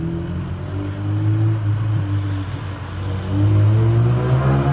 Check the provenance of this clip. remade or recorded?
recorded